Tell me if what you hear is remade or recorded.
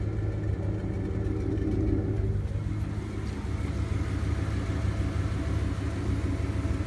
recorded